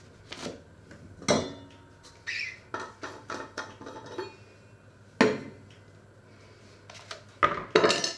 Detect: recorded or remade recorded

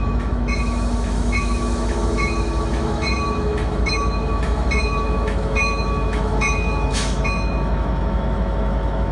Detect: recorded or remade remade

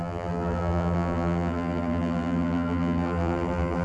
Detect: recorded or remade remade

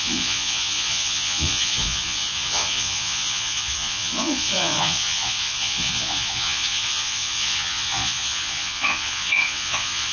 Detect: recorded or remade remade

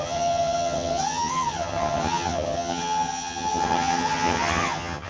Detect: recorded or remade remade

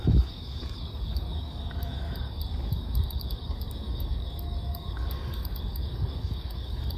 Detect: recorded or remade remade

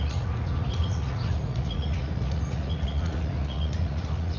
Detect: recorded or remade remade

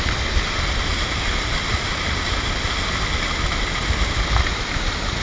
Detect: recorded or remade recorded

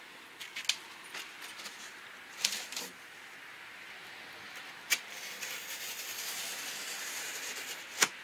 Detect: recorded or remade recorded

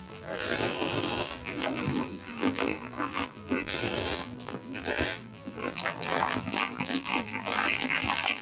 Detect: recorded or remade remade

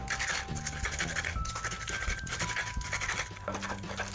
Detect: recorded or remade recorded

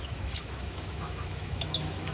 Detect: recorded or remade remade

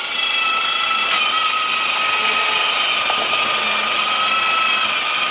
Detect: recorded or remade recorded